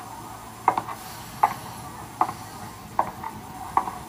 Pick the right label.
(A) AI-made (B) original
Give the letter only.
B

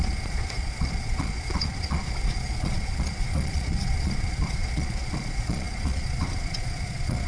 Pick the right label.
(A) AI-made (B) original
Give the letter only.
A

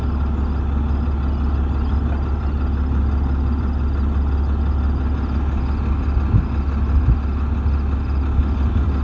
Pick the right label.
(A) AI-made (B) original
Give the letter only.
B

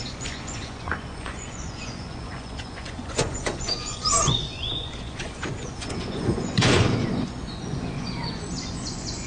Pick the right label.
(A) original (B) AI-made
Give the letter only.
B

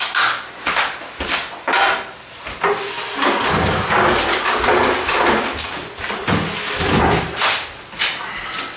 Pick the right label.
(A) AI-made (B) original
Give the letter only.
B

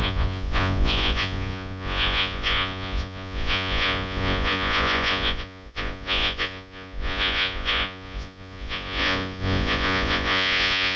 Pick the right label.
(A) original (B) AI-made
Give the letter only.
B